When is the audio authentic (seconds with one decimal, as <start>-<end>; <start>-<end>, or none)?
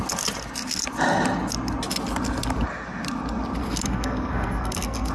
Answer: 0.0-3.6